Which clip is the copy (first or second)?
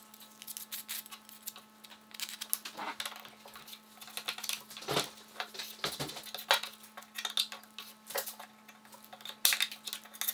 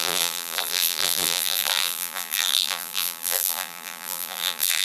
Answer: second